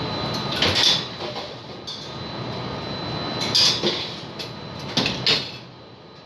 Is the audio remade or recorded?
recorded